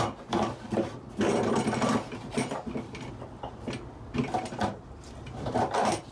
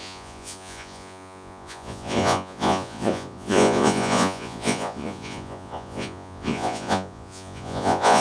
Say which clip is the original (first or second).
first